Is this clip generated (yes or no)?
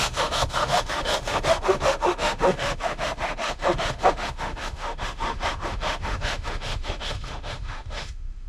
yes